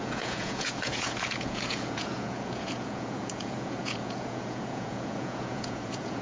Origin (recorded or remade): remade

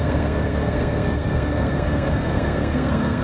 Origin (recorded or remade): remade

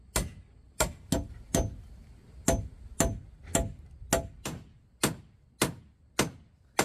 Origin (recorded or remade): recorded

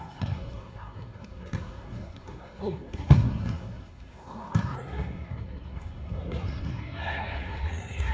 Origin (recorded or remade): remade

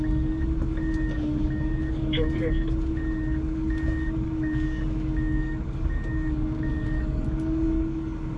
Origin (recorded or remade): remade